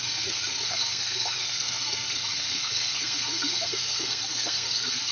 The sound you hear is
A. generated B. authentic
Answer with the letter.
A